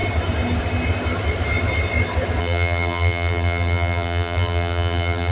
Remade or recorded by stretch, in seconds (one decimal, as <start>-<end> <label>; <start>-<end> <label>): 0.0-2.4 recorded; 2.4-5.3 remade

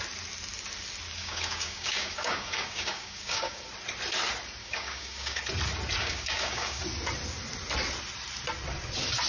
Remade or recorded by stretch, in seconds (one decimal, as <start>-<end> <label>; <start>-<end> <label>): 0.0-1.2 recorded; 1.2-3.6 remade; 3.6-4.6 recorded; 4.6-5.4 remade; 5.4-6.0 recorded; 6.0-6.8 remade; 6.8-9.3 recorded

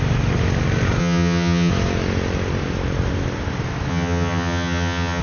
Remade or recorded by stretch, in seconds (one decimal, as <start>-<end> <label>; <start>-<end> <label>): 0.0-1.0 recorded; 1.0-1.7 remade; 1.7-3.9 recorded; 3.9-5.2 remade

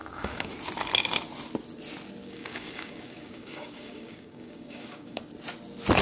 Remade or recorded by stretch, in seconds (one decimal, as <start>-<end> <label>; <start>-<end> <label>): 0.0-0.5 remade; 0.5-2.2 recorded; 2.2-5.2 remade; 5.2-6.0 recorded

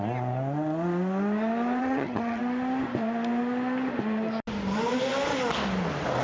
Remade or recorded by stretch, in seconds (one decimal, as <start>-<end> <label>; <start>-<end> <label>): 0.0-1.8 recorded; 1.8-2.4 remade; 2.4-6.2 recorded